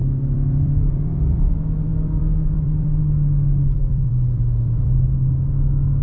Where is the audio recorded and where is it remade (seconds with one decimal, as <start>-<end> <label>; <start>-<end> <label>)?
0.0-1.5 remade; 1.5-1.9 recorded; 1.9-3.0 remade; 3.0-3.8 recorded; 3.8-5.3 remade; 5.3-6.0 recorded